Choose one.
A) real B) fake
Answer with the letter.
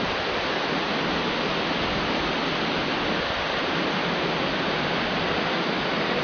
A